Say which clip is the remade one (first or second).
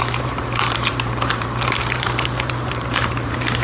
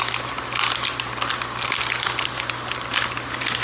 first